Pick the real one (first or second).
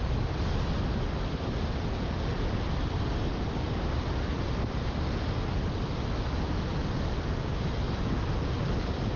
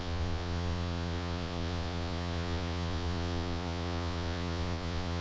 first